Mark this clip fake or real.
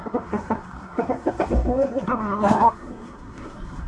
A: fake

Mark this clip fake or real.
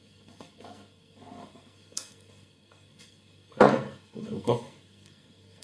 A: fake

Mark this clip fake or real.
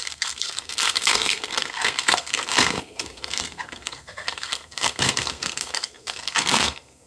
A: fake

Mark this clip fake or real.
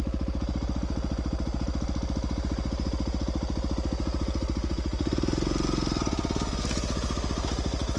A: real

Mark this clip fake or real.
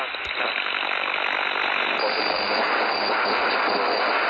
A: real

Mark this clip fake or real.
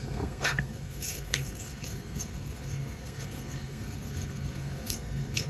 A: fake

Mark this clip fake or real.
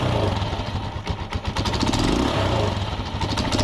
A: real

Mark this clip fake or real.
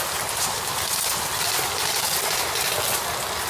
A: real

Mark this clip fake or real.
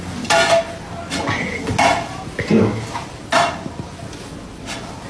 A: real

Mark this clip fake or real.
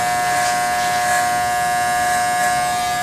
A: real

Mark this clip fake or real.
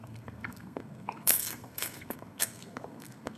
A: fake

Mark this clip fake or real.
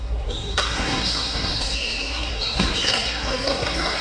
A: fake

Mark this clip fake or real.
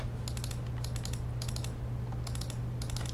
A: real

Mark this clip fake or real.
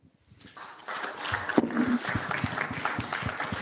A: real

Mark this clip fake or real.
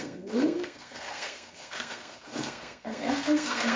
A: fake